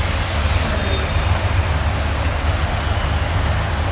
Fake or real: real